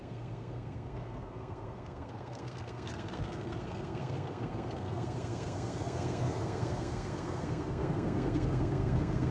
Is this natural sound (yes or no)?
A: no